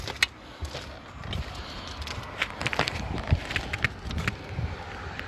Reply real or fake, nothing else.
real